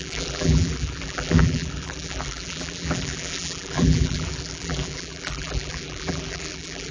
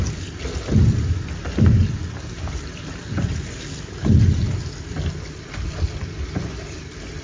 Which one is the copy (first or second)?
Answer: first